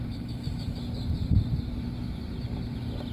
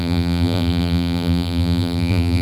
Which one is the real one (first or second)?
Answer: first